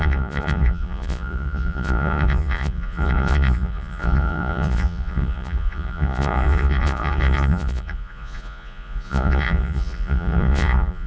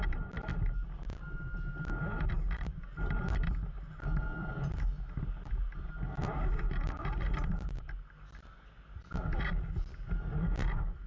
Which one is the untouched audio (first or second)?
second